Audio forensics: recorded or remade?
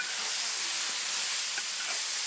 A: recorded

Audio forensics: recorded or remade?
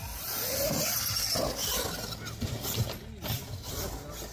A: recorded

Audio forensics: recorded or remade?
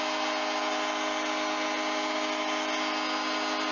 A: recorded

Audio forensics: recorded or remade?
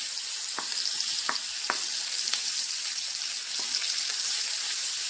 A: recorded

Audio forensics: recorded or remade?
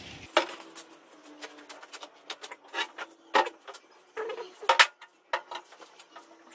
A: recorded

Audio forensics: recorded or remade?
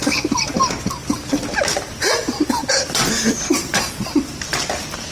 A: recorded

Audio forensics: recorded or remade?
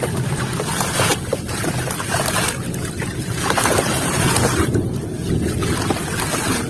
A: recorded